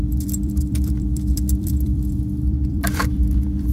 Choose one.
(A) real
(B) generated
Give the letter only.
B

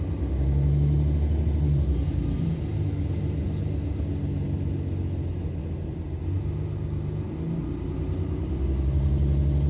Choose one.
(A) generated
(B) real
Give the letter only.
B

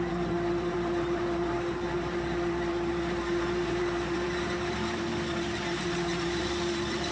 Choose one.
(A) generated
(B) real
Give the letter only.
A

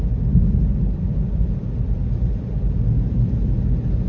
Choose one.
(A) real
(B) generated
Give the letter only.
A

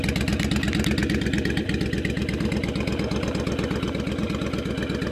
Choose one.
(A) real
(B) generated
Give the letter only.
A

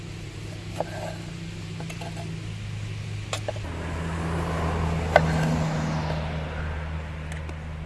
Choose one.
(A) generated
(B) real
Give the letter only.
B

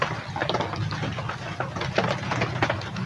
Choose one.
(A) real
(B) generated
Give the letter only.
A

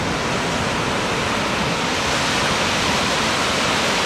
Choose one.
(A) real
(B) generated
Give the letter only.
A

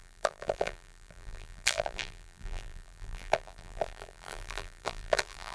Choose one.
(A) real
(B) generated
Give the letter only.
B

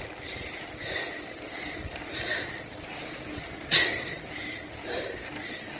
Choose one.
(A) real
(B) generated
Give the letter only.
A